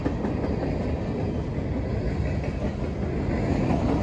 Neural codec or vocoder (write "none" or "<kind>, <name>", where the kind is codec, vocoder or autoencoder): none